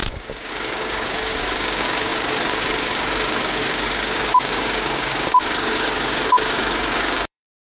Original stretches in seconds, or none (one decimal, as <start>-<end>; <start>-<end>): none